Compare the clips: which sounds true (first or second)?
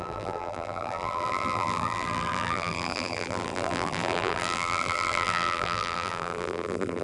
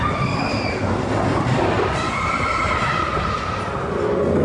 second